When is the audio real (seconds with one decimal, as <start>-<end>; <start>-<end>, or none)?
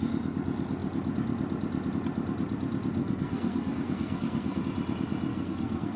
0.0-3.0; 4.6-5.3